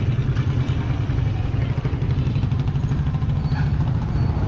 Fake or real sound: real